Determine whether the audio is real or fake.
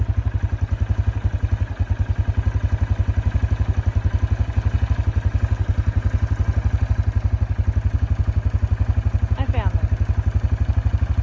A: real